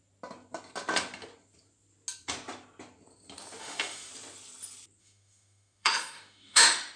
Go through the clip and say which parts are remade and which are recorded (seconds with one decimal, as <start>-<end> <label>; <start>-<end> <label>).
0.0-3.6 recorded; 3.6-4.1 remade; 4.1-5.0 recorded; 5.0-7.0 remade